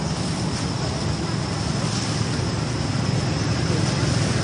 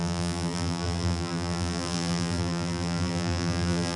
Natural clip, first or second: first